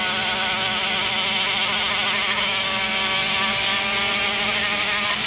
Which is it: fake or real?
real